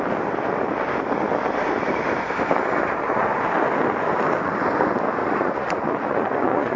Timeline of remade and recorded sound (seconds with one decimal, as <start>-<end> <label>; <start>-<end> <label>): 0.0-3.0 recorded; 3.0-3.5 remade; 3.5-5.2 recorded; 5.2-6.8 remade